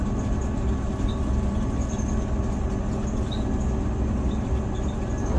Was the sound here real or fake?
real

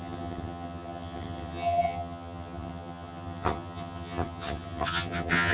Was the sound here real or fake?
fake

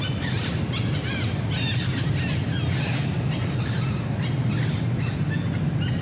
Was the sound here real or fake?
real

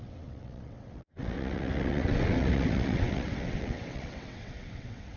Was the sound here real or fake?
fake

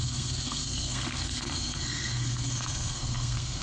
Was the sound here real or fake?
fake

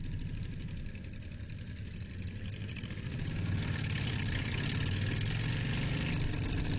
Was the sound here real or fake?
real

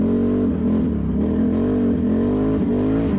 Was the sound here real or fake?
real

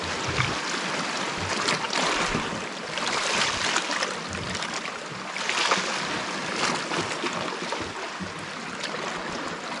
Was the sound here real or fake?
real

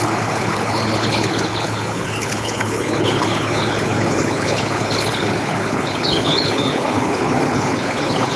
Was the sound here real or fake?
fake